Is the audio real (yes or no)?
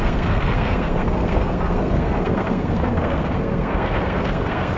no